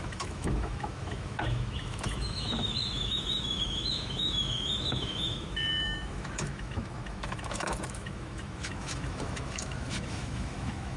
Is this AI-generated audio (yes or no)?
yes